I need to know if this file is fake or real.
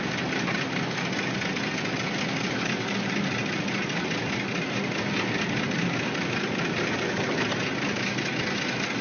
real